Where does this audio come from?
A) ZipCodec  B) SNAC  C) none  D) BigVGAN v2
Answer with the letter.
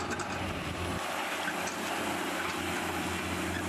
C